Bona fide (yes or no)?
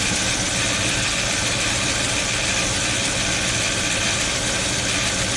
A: yes